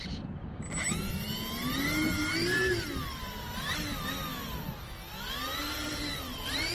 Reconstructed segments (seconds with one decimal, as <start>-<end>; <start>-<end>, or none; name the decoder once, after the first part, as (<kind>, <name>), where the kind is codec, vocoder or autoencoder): 5.6-6.7 (vocoder, BigVGAN v2)